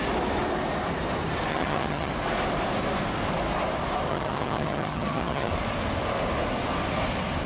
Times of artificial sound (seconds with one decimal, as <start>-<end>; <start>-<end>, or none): 1.5-2.1; 4.1-5.5